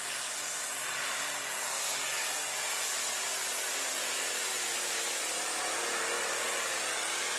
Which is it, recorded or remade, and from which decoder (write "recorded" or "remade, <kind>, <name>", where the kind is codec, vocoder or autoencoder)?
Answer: recorded